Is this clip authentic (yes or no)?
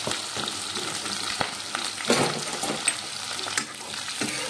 yes